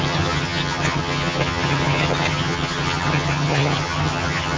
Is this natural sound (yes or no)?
no